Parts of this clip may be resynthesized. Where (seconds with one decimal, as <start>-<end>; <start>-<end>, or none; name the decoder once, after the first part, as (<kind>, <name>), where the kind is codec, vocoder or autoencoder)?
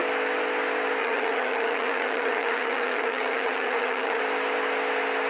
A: 1.0-4.2 (vocoder, HiFi-GAN)